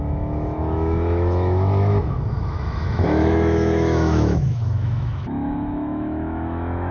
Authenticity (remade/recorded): remade